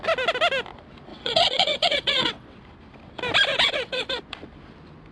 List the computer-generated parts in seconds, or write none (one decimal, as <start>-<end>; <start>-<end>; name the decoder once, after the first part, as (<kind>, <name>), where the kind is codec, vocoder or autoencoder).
1.1-2.6 (vocoder, WaveNeXt); 3.5-4.2

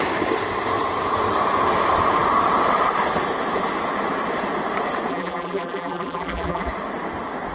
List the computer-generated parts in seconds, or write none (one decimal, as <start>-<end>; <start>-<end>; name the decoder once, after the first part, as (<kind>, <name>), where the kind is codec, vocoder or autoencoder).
5.1-6.7 (vocoder, BigVGAN v2)

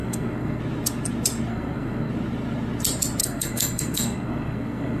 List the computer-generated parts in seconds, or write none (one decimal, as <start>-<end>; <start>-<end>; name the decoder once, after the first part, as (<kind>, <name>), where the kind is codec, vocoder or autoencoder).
0.0-0.6 (codec, SNAC); 1.5-2.1; 3.2-5.0

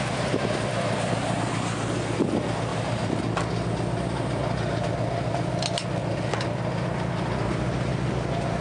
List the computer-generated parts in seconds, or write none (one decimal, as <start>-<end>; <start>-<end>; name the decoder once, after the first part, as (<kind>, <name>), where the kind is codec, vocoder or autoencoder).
2.7-3.2 (vocoder, BigVGAN v2)

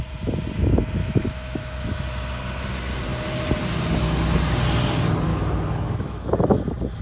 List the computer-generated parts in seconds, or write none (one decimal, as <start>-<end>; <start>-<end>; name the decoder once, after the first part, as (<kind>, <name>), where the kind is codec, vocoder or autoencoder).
1.0-2.0 (autoencoder, DAC-VAE); 5.3-6.6

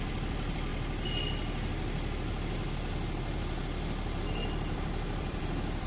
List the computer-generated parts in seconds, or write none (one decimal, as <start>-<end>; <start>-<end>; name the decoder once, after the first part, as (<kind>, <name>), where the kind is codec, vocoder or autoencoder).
0.0-0.7 (vocoder, BigVGAN v2); 4.2-5.9

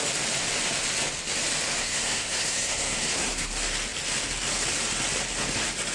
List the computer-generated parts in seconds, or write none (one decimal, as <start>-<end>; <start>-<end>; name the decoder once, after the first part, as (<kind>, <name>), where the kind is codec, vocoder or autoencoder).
1.8-3.5 (codec, SNAC)